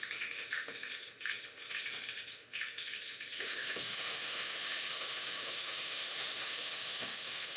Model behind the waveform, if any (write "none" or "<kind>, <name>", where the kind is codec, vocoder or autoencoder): autoencoder, DAC-VAE